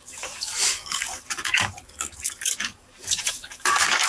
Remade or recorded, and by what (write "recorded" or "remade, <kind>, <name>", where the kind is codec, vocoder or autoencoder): remade, codec, DAC